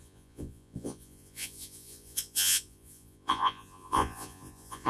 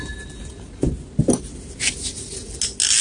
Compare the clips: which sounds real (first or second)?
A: second